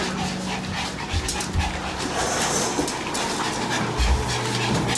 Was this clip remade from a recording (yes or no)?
no